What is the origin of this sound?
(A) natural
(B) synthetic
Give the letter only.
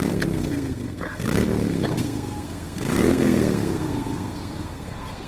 B